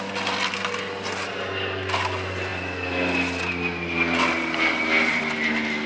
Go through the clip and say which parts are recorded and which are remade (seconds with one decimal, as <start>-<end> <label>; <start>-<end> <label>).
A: 0.0-5.9 recorded

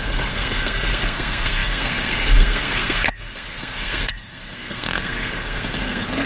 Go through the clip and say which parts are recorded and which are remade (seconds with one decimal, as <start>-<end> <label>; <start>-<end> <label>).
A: 0.0-6.3 remade

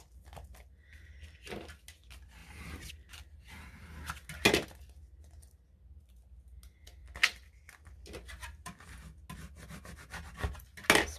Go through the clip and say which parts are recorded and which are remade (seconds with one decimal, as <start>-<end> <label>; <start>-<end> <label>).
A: 0.0-11.2 recorded

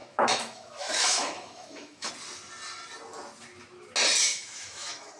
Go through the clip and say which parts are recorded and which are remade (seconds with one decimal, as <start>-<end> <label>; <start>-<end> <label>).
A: 0.0-2.1 remade; 2.1-4.3 recorded; 4.3-5.2 remade

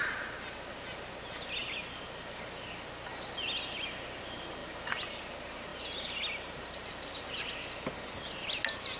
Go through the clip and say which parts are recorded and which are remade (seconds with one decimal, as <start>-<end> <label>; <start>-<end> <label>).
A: 0.0-9.0 recorded

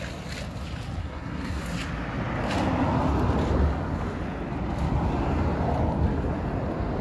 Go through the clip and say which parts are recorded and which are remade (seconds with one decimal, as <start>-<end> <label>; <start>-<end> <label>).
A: 0.0-1.0 recorded; 1.0-1.6 remade; 1.6-7.0 recorded